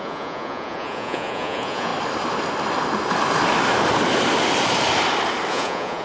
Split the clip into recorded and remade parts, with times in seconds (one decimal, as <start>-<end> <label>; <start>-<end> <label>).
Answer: 0.0-1.9 remade; 1.9-5.5 recorded; 5.5-6.0 remade